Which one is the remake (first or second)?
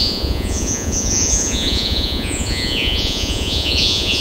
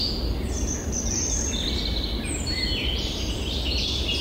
first